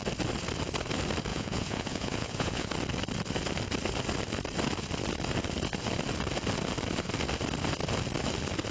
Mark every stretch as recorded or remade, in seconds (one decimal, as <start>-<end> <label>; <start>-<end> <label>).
0.0-1.3 recorded; 1.3-2.7 remade; 2.7-8.7 recorded